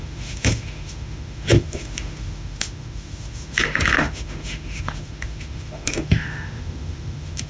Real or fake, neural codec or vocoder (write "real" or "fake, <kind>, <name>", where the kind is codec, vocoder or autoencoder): fake, autoencoder, DAC-VAE